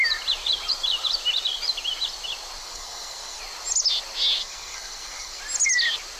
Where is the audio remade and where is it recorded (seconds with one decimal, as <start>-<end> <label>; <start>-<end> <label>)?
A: 0.0-2.6 recorded; 2.6-3.4 remade; 3.4-4.4 recorded; 4.4-5.4 remade; 5.4-6.2 recorded